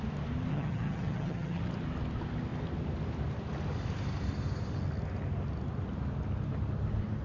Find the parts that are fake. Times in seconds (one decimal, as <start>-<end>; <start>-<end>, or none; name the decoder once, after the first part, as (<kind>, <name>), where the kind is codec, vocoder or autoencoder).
0.5-1.6 (vocoder, HiFi-GAN)